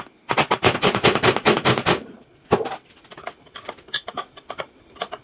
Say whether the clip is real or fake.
real